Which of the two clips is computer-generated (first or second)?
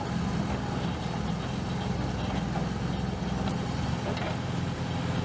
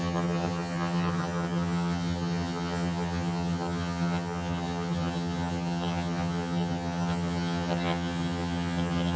second